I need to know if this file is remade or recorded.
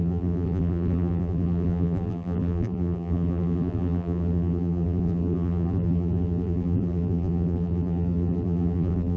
remade